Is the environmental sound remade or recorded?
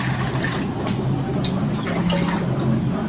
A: recorded